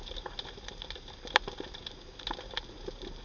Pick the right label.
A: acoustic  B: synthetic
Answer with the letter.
A